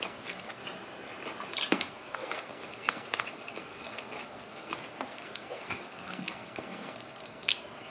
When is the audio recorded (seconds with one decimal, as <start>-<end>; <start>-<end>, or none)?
0.6-1.7